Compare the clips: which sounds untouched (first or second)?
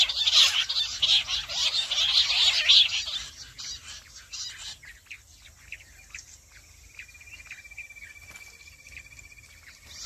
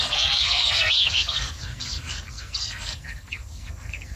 first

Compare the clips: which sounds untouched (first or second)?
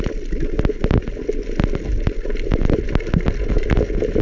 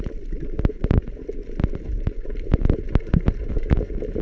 first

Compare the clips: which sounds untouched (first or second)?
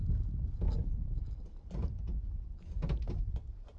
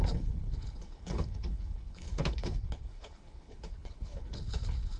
first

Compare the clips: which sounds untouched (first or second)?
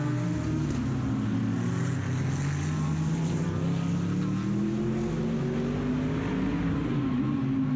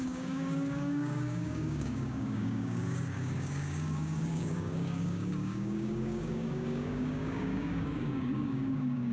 first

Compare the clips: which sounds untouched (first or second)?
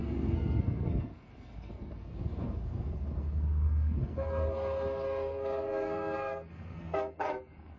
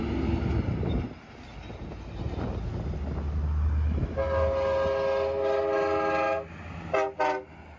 second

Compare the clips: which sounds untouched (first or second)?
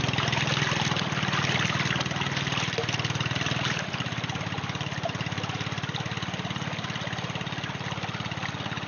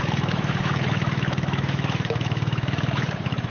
first